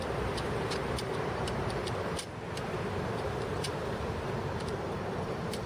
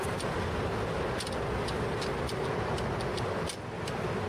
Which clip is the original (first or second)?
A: second